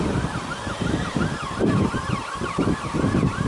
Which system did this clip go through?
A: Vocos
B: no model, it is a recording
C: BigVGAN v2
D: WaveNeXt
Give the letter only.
C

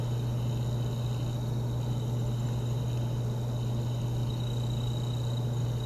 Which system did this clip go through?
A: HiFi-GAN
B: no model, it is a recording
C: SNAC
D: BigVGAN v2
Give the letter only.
B